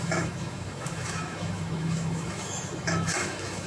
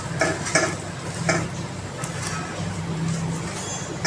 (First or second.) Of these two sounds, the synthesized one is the first